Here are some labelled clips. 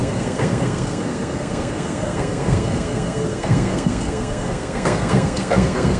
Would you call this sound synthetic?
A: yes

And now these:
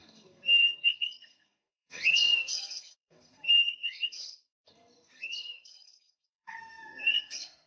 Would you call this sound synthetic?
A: yes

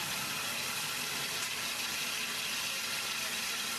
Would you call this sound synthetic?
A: no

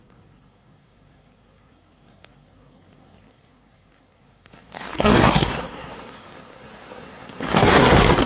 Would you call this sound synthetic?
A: yes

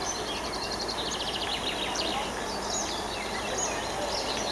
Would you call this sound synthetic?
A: no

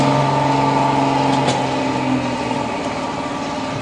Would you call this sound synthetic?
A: no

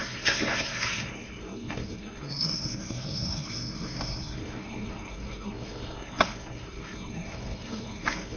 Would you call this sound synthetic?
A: yes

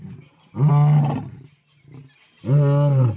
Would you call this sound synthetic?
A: no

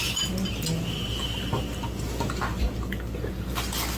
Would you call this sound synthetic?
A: no